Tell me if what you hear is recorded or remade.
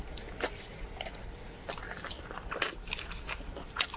remade